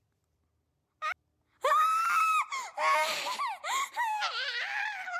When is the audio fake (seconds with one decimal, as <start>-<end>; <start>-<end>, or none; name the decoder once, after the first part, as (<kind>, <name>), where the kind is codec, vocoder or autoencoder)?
2.6-5.2 (vocoder, BigVGAN v2)